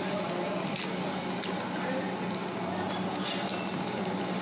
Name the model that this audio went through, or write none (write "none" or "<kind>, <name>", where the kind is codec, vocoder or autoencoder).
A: none